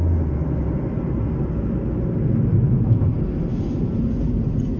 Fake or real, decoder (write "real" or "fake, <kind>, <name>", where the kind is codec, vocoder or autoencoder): real